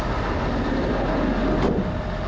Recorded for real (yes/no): yes